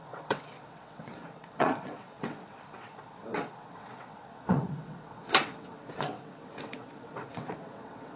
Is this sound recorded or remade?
remade